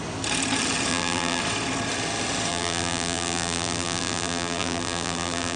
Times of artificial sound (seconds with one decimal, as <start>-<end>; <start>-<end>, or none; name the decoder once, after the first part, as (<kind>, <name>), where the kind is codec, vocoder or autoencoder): 0.9-1.4 (vocoder, BigVGAN v2); 2.5-5.6